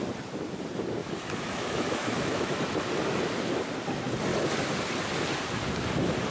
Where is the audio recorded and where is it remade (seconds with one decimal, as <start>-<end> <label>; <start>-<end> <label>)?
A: 0.0-1.0 recorded; 1.0-2.6 remade; 2.6-6.3 recorded